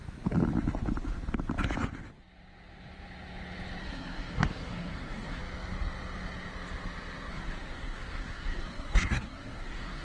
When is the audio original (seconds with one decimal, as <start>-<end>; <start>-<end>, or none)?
0.0-3.8; 5.4-7.3